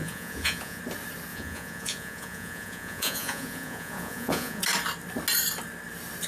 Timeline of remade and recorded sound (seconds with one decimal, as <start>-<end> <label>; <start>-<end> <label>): 0.0-0.8 remade; 0.8-1.3 recorded; 1.3-4.6 remade; 4.6-6.3 recorded